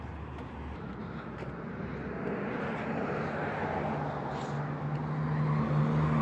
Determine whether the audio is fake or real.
real